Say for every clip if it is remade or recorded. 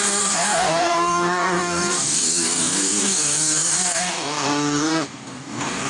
remade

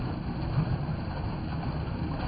recorded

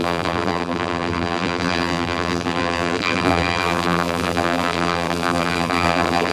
remade